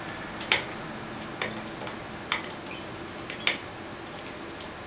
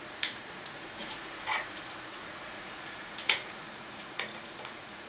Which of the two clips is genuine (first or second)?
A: first